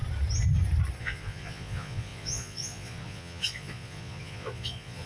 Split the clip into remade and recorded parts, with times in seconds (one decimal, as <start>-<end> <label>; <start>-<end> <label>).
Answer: 0.0-1.0 recorded; 1.0-5.1 remade